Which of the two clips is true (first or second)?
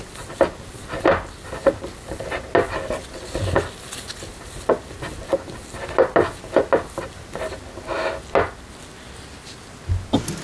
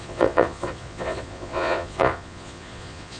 first